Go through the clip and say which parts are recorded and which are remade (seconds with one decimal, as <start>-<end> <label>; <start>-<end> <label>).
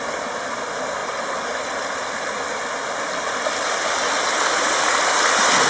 0.0-1.0 recorded; 1.0-4.4 remade; 4.4-5.7 recorded